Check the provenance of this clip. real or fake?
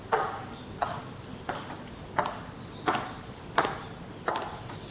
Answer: real